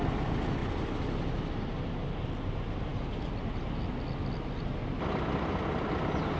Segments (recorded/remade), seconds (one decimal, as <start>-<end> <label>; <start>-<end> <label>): 0.0-6.4 recorded